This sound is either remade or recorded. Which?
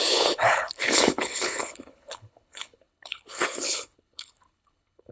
remade